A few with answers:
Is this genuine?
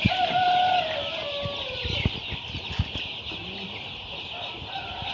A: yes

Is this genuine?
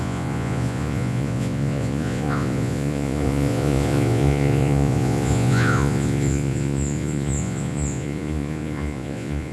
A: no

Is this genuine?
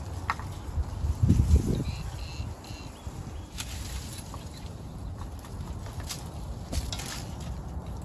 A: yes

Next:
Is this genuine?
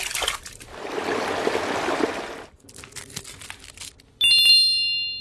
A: yes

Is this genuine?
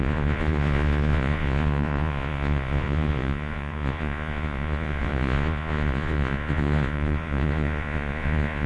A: no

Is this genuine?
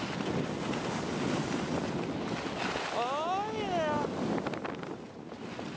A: yes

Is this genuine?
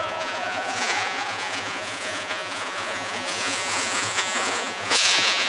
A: no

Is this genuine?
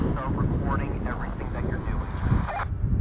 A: yes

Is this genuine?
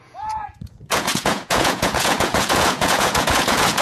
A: no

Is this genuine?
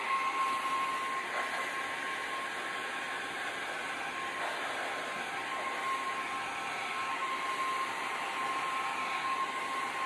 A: yes